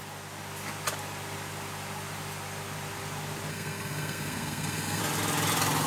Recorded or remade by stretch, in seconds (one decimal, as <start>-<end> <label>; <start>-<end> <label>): 0.0-3.5 recorded; 3.5-5.0 remade; 5.0-5.9 recorded